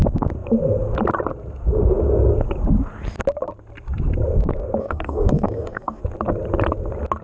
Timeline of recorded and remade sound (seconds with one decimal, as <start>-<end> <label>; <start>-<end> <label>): 0.0-4.8 recorded; 4.8-6.0 remade; 6.0-7.2 recorded